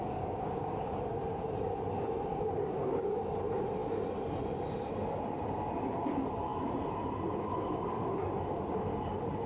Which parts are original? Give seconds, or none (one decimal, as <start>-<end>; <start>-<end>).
1.0-2.3; 3.2-9.5